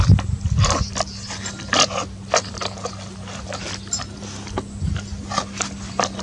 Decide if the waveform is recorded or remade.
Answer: recorded